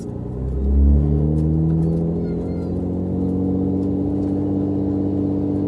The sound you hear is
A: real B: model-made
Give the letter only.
A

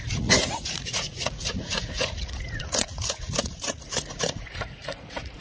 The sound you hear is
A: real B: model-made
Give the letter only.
B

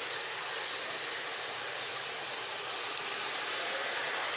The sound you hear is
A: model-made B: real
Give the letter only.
B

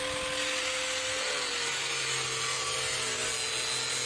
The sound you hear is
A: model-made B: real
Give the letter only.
B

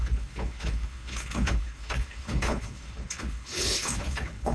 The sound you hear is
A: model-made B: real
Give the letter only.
A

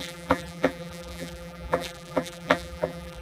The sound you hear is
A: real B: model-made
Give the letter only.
B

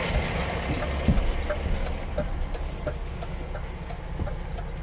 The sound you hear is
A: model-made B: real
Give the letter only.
B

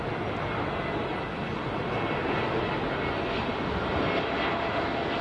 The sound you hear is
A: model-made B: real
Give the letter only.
B